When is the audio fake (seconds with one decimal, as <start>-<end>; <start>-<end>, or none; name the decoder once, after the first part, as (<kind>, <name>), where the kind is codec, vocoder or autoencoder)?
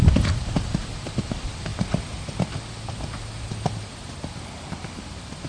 none